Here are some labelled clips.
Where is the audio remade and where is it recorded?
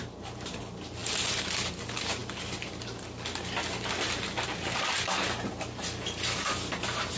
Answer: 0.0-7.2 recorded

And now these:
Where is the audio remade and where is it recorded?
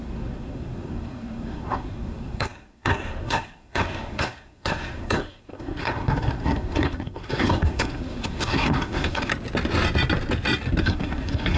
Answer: 0.0-9.3 remade; 9.3-10.8 recorded; 10.8-11.6 remade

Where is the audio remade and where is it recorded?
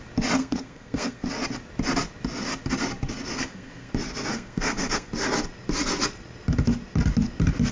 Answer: 0.0-0.4 recorded; 0.4-1.3 remade; 1.3-3.3 recorded; 3.3-3.9 remade; 3.9-4.3 recorded; 4.3-5.1 remade; 5.1-7.7 recorded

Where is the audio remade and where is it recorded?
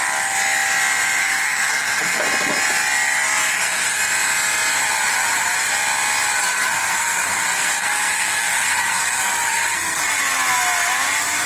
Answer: 0.0-1.2 recorded; 1.2-2.2 remade; 2.2-3.5 recorded; 3.5-4.0 remade; 4.0-6.4 recorded; 6.4-10.0 remade; 10.0-11.5 recorded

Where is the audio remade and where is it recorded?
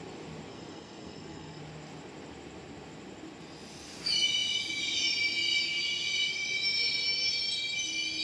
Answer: 0.0-0.5 recorded; 0.5-1.6 remade; 1.6-8.2 recorded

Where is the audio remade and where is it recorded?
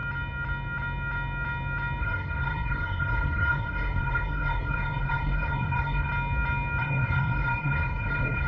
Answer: 0.0-2.0 recorded; 2.0-6.1 remade; 6.1-6.8 recorded; 6.8-8.5 remade